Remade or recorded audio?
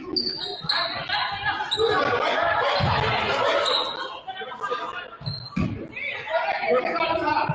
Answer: recorded